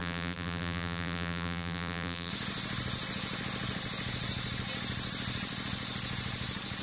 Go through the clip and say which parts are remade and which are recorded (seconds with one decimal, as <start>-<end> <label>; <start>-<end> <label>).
0.0-2.3 remade; 2.3-6.8 recorded